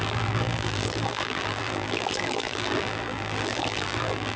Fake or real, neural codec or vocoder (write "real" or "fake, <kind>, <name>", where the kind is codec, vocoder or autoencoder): fake, vocoder, BigVGAN v2